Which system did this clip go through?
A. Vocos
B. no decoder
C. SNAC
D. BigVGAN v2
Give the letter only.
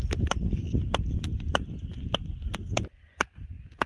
B